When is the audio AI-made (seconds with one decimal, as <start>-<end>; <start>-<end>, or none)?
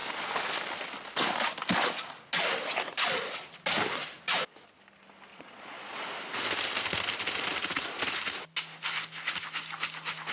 5.3-6.0